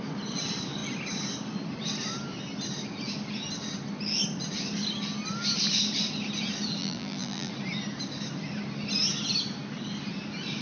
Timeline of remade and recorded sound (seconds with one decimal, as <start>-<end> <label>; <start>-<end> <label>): 0.0-6.8 recorded; 6.8-7.5 remade; 7.5-10.6 recorded